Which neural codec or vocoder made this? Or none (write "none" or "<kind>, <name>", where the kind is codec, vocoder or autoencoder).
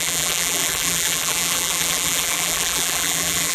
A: vocoder, BigVGAN v2